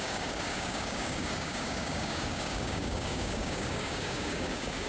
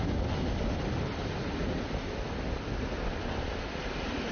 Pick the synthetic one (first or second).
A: first